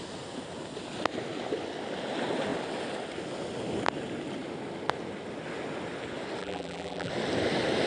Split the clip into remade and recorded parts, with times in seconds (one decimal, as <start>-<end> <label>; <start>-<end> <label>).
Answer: 0.0-6.4 recorded; 6.4-7.1 remade; 7.1-7.9 recorded